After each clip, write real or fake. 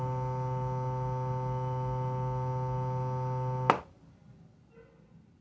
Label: real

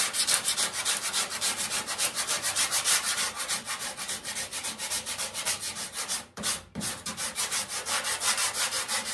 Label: fake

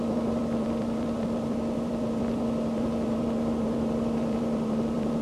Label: fake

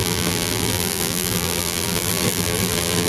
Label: fake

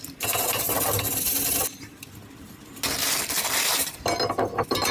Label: real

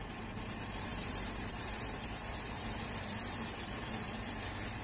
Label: fake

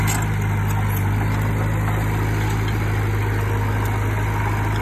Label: real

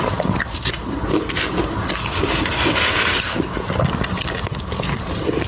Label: real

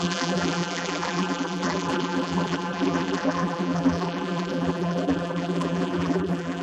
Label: fake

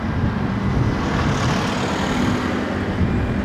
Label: real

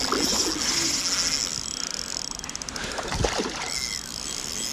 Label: real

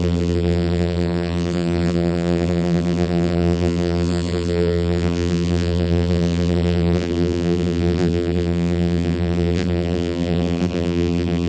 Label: fake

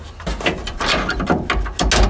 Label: real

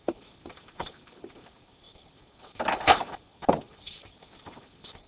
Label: fake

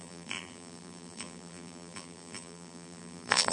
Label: fake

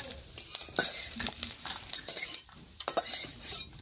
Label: fake